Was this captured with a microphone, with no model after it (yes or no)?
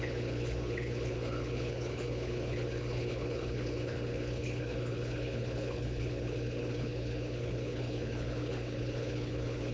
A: no